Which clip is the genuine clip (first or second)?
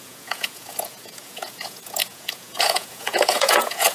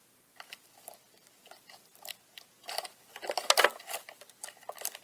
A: second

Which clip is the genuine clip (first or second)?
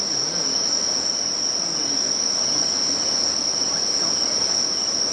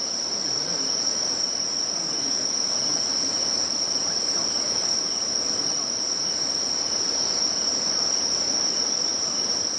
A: first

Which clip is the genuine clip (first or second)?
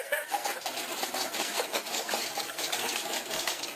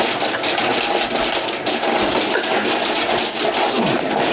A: second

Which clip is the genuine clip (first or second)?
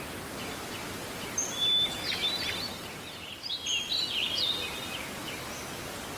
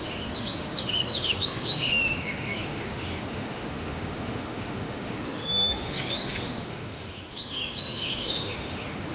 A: first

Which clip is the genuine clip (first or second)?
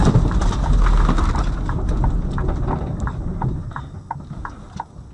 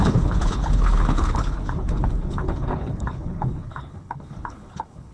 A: first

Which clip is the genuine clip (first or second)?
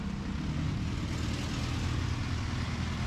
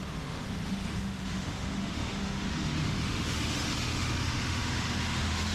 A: first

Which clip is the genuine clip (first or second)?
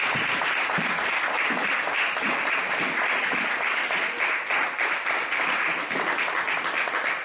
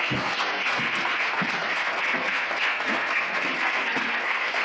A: first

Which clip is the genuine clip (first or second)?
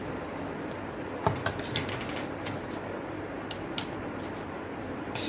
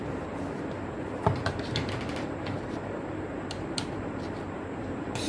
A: first